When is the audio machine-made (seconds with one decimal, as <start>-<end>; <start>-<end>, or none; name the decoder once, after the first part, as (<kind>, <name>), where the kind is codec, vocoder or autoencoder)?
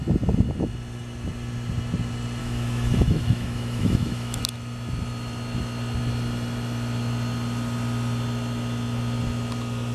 2.4-4.4 (autoencoder, DAC-VAE)